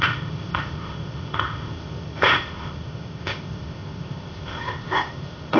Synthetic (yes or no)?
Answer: yes